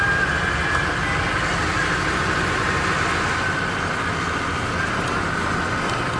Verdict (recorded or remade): recorded